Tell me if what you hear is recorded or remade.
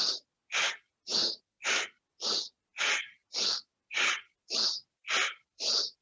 recorded